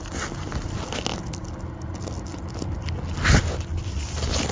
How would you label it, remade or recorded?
recorded